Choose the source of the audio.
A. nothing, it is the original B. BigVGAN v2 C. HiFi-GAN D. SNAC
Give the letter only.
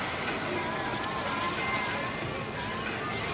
A